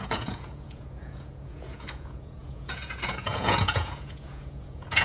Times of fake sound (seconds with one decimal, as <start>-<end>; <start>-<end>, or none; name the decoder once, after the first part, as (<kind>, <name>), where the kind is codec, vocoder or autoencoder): 0.0-5.0 (vocoder, Vocos)